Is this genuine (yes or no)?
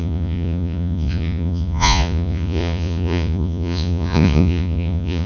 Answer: no